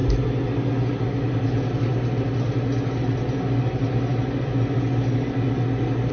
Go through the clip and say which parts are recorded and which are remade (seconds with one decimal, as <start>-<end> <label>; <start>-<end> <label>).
0.0-6.1 recorded